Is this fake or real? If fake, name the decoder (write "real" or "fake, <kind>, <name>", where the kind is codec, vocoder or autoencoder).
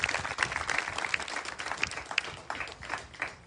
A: real